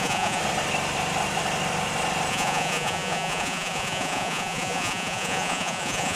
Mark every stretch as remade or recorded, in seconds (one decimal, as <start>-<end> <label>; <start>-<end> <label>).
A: 0.0-0.4 remade; 0.4-2.3 recorded; 2.3-6.2 remade